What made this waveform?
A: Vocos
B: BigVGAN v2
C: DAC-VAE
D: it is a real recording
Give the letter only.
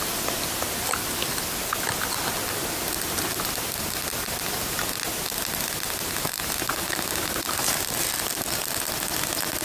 D